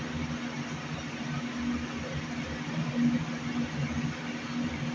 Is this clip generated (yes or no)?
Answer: no